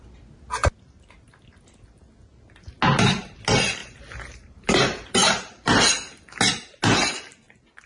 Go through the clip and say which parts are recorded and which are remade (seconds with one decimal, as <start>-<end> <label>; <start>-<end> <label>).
0.0-3.8 recorded; 3.8-5.9 remade; 5.9-7.9 recorded